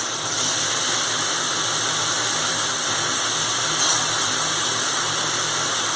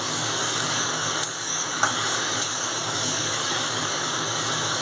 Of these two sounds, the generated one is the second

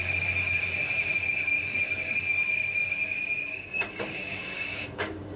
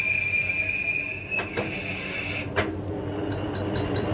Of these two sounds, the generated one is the first